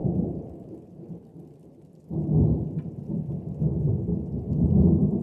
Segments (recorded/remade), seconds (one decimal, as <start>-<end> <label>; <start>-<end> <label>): 0.0-5.2 recorded